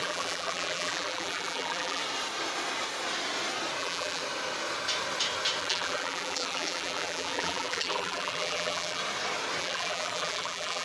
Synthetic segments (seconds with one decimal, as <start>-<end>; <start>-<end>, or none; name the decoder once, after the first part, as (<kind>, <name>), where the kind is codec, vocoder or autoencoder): 0.0-2.0 (vocoder, BigVGAN v2); 3.8-4.2; 5.6-9.0; 9.6-10.8